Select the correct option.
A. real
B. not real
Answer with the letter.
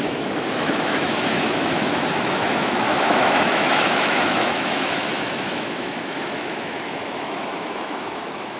B